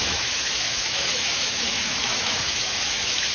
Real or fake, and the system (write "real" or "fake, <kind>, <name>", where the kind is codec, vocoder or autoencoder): fake, autoencoder, DAC-VAE